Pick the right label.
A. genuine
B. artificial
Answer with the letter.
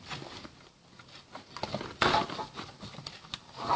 A